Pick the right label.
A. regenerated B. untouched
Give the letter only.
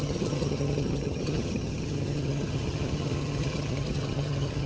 A